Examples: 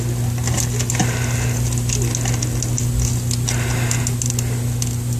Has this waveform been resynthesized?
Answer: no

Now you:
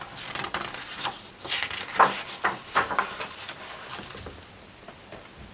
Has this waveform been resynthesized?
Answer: yes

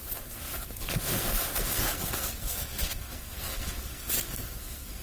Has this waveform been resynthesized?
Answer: yes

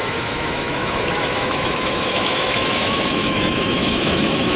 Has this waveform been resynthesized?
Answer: yes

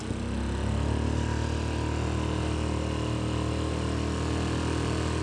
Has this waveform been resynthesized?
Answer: no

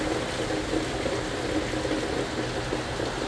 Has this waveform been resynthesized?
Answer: no